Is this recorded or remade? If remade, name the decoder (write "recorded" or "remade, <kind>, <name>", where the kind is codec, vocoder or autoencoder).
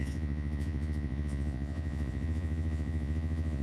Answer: remade, vocoder, Vocos